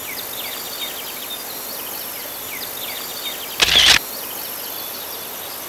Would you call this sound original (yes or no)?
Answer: yes